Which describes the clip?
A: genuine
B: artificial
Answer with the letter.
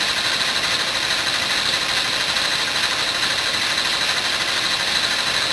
A